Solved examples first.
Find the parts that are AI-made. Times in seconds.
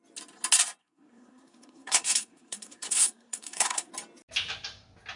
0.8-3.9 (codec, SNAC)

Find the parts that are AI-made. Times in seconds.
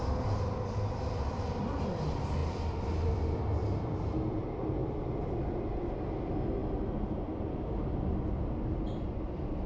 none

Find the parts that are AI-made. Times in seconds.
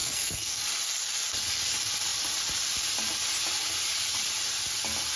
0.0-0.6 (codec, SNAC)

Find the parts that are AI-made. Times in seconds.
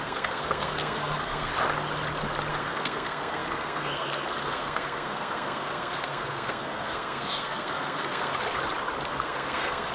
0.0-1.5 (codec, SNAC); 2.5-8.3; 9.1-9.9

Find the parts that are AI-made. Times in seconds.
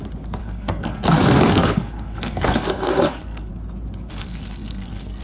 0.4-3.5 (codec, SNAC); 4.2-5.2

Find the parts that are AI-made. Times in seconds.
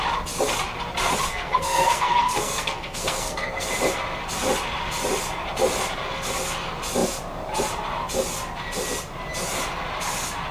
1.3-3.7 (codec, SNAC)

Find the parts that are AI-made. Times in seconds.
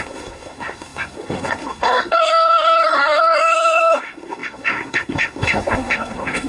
0.0-6.5 (codec, SNAC)